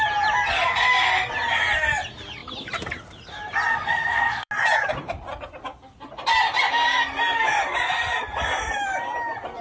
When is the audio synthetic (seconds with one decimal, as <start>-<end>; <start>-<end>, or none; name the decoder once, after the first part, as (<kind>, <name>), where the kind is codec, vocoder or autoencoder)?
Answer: 3.7-4.5 (codec, SNAC)